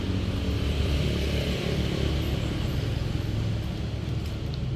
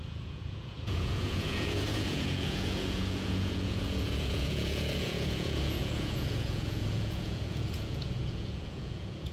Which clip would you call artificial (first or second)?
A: second